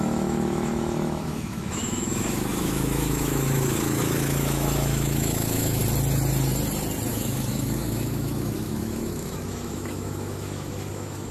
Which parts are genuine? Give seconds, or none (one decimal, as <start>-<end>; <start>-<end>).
5.8-7.1